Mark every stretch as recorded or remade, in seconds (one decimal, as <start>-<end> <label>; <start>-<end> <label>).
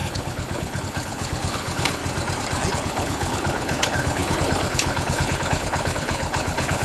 0.0-2.0 remade; 2.0-2.7 recorded; 2.7-6.8 remade